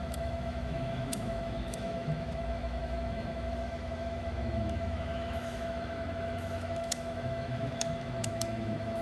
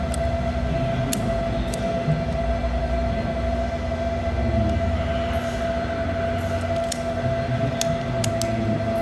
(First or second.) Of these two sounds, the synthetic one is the first